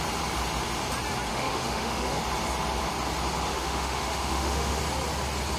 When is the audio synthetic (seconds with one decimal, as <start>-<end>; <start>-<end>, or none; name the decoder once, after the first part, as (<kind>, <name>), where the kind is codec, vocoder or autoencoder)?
1.3-2.2 (autoencoder, DAC-VAE); 3.5-4.8

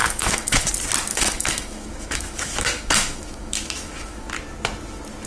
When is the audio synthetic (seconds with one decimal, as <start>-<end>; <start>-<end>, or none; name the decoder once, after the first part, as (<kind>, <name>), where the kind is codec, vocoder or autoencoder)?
0.0-0.7 (autoencoder, DAC-VAE); 1.1-4.3